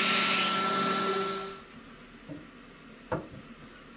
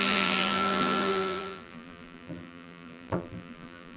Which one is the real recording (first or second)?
first